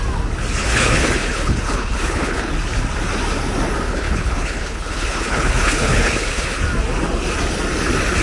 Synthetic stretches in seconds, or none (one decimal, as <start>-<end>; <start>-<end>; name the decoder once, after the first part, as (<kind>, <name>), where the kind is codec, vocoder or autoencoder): 0.6-2.5 (codec, HILCodec); 3.9-6.6